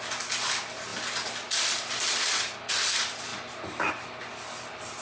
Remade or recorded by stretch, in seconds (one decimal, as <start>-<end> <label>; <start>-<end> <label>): 0.0-5.0 recorded